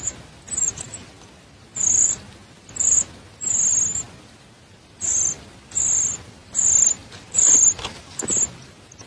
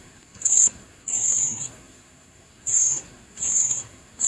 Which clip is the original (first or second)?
first